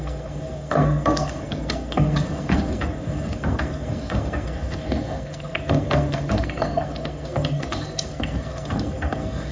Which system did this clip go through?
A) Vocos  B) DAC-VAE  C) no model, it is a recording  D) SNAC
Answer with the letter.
D